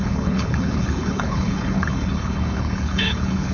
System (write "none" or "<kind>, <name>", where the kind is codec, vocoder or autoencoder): codec, HILCodec